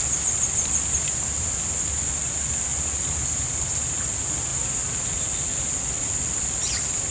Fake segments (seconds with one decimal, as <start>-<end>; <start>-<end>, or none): none